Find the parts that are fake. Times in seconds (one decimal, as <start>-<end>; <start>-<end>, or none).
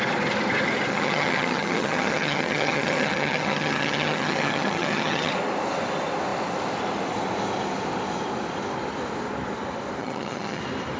0.9-5.3; 10.0-10.6